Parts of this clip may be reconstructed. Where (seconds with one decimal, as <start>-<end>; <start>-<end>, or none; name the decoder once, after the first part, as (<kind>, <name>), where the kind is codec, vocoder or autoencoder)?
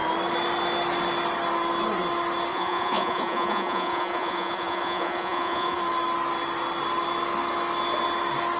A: 2.5-5.8 (vocoder, Vocos)